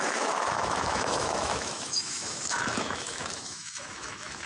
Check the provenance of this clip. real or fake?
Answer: fake